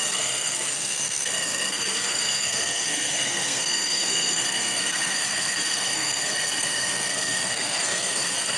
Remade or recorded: remade